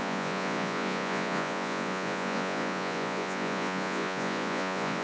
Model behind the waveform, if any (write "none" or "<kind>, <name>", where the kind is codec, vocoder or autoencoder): vocoder, Vocos